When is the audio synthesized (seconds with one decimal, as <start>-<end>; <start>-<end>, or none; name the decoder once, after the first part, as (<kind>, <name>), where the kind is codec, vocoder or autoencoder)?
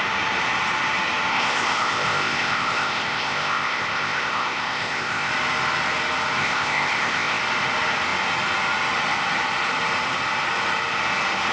1.3-5.3 (codec, ZipCodec); 6.4-7.4